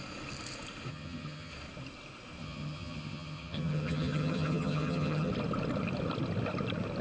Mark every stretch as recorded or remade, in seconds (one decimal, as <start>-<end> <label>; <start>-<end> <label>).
0.0-0.9 recorded; 0.9-1.5 remade; 1.5-2.4 recorded; 2.4-5.3 remade; 5.3-7.0 recorded